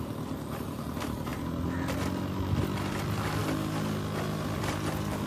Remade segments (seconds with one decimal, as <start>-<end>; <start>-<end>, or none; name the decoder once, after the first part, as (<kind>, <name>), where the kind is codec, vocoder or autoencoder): none